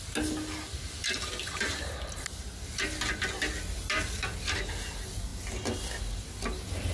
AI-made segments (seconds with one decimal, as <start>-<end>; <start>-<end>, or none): none